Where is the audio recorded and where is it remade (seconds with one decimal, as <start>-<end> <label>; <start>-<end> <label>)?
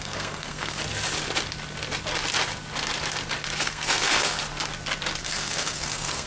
0.0-0.8 remade; 0.8-3.6 recorded; 3.6-4.4 remade; 4.4-5.2 recorded; 5.2-6.3 remade